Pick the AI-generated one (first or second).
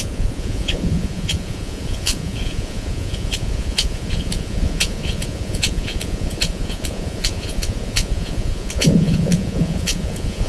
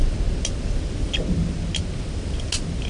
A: first